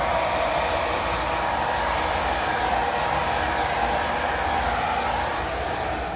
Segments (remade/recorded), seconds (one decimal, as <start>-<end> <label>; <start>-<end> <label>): 0.0-2.8 remade; 2.8-5.2 recorded; 5.2-6.2 remade